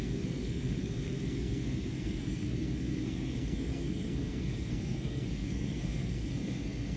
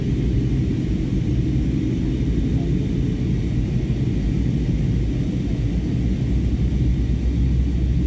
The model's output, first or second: first